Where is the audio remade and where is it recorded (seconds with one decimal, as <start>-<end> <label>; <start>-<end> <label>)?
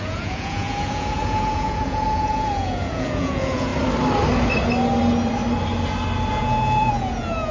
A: 0.0-3.7 remade; 3.7-6.3 recorded; 6.3-7.5 remade